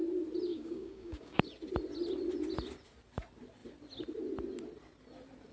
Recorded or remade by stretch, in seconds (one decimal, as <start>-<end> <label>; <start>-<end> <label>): 0.0-0.5 recorded; 0.5-1.4 remade; 1.4-5.5 recorded